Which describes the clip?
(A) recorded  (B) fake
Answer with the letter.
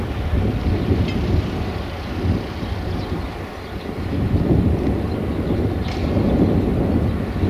A